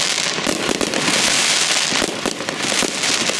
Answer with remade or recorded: recorded